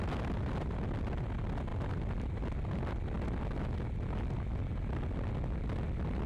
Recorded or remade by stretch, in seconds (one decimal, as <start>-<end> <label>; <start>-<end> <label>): 0.0-6.3 recorded